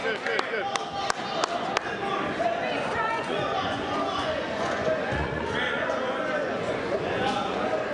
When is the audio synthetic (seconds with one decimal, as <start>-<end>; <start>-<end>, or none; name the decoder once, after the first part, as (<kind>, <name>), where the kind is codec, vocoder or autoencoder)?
2.4-7.9 (vocoder, Vocos)